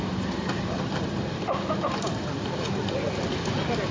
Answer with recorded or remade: recorded